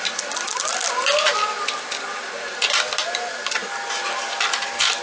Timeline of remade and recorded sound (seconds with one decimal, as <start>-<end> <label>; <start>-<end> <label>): 0.0-5.0 recorded